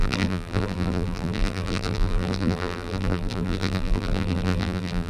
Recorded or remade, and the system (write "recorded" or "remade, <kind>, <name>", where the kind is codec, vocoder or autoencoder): remade, vocoder, BigVGAN v2